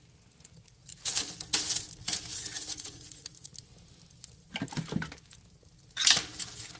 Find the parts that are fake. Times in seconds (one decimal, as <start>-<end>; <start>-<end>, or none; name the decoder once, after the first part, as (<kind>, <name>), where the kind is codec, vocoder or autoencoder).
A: 2.6-3.5 (vocoder, Vocos)